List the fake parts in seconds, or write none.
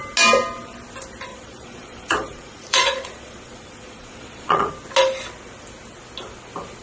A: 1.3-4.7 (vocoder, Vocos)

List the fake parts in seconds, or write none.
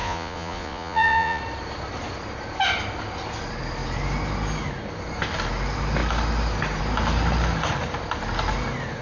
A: 0.0-1.4 (vocoder, Vocos)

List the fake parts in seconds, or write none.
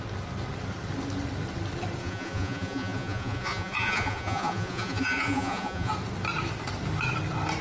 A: 2.0-5.9 (vocoder, Vocos)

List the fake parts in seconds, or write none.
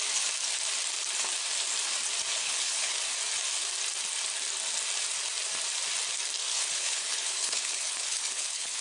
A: 2.3-3.0 (codec, HILCodec); 6.4-8.8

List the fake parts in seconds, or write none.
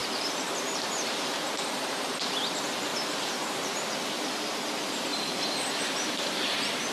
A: 0.0-2.1 (vocoder, BigVGAN v2); 2.9-3.9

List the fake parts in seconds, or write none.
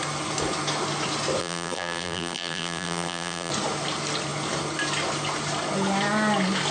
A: 1.4-3.5 (vocoder, BigVGAN v2)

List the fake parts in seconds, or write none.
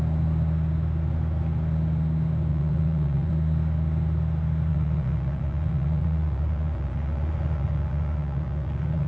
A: 2.5-3.3 (vocoder, Vocos); 4.7-9.1